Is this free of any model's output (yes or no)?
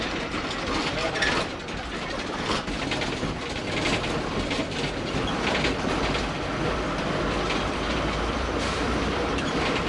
no